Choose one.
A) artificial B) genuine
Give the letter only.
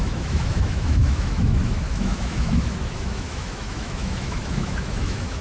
A